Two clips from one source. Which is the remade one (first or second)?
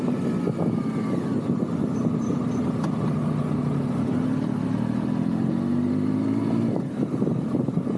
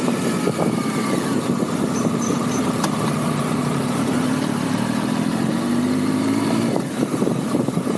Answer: second